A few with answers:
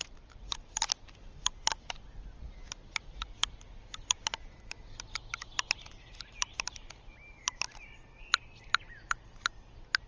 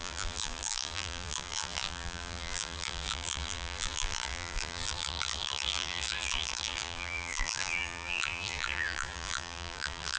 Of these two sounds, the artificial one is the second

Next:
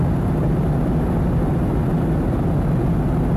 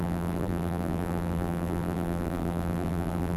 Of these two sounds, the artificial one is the second